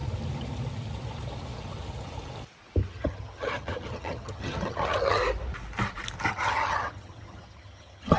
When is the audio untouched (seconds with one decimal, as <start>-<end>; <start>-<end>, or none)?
0.0-2.9; 5.2-6.3